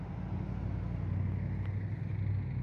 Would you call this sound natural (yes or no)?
yes